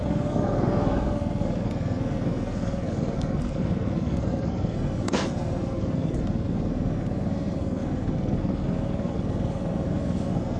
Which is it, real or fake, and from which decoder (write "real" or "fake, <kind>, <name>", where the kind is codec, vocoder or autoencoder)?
fake, codec, SNAC